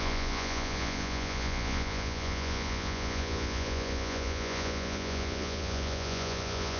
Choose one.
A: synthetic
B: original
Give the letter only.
A